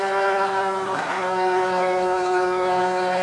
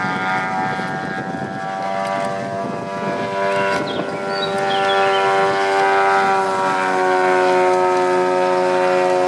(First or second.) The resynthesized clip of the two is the first